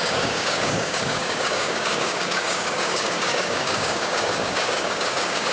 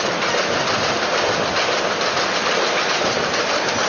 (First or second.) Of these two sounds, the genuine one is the second